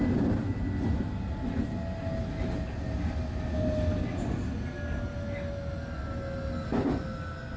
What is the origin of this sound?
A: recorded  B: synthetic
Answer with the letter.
A